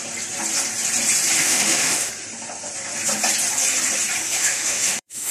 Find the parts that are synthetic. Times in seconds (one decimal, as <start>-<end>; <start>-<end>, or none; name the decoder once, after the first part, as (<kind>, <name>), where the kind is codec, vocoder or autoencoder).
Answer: 1.4-2.1 (autoencoder, DAC-VAE); 4.2-5.3